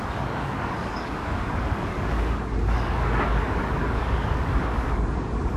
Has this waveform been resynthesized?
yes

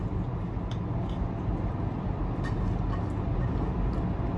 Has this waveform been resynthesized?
no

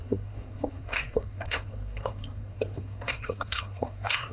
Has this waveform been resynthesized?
yes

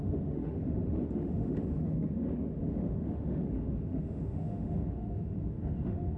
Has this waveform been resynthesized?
yes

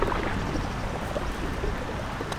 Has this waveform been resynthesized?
no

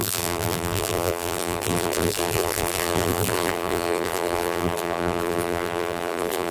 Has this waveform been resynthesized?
yes